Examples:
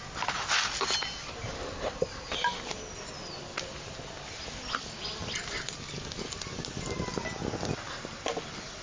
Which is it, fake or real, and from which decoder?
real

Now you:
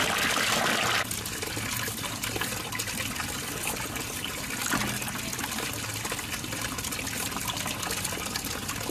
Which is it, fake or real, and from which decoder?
real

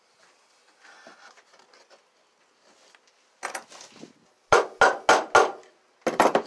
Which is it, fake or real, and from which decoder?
real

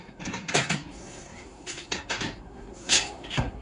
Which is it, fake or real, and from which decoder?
fake, codec, SNAC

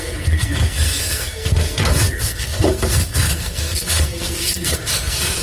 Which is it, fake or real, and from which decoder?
fake, codec, SNAC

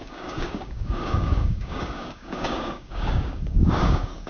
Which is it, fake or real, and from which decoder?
fake, codec, DAC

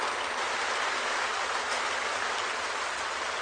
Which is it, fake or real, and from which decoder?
real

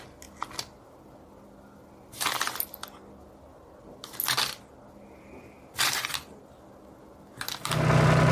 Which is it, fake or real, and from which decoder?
real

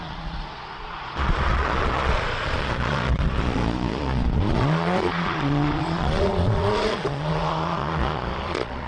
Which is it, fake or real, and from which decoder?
fake, vocoder, Vocos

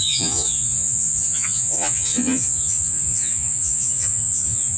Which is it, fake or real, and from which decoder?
fake, vocoder, Vocos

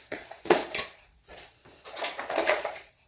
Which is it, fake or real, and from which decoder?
fake, vocoder, Vocos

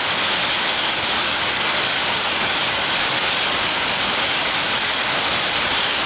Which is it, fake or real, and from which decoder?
fake, codec, DAC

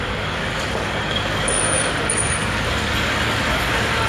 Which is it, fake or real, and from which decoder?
fake, codec, DAC